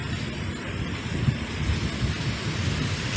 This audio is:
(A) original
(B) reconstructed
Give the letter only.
A